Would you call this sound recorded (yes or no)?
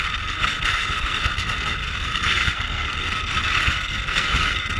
no